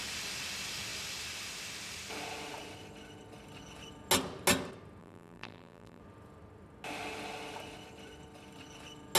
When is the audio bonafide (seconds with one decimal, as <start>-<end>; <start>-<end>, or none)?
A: 0.0-5.0; 6.0-9.2